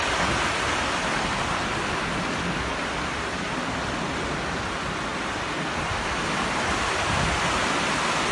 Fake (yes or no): no